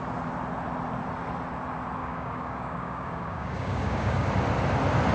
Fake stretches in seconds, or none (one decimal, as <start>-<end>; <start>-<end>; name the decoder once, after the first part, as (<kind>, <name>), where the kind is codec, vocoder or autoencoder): 2.0-4.3 (codec, DAC)